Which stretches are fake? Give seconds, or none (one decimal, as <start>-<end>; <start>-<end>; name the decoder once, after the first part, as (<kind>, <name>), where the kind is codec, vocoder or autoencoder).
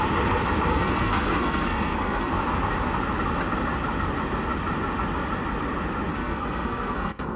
0.7-2.3 (codec, SNAC); 6.1-7.4